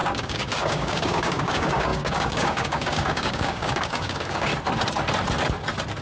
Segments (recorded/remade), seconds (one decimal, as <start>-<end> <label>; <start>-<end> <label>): 0.0-4.5 remade; 4.5-6.0 recorded